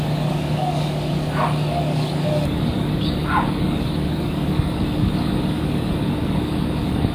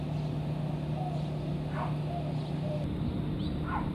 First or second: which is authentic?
second